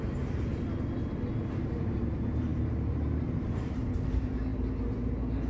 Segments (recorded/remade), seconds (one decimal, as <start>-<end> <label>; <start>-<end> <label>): 0.0-0.5 remade; 0.5-1.4 recorded; 1.4-4.5 remade; 4.5-5.5 recorded